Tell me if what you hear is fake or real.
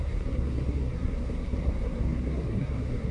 fake